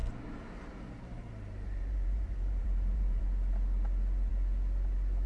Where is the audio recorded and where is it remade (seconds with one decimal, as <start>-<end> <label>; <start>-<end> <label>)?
0.0-3.2 remade; 3.2-5.3 recorded